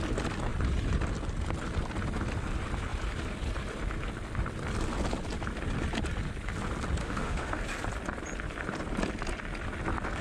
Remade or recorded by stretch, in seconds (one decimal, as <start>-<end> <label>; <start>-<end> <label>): 0.0-7.0 recorded; 7.0-7.6 remade; 7.6-10.2 recorded